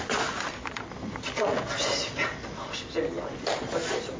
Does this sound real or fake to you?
real